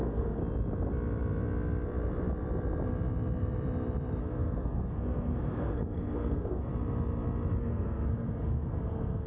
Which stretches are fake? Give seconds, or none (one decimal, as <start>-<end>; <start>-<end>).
0.0-0.4; 4.2-6.7; 7.6-9.3